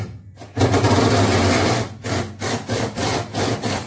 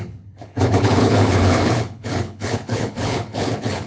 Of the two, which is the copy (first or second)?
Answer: second